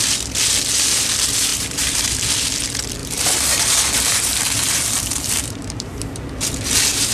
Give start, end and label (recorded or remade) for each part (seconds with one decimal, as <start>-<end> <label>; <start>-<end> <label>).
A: 0.0-1.5 recorded; 1.5-2.0 remade; 2.0-3.0 recorded; 3.0-5.9 remade; 5.9-7.1 recorded